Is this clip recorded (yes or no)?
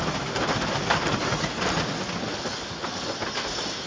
yes